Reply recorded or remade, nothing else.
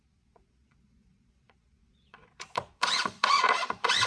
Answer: remade